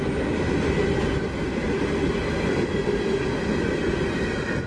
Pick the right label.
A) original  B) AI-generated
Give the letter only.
A